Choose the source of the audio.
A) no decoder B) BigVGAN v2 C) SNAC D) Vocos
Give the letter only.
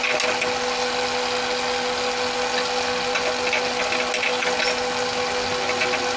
A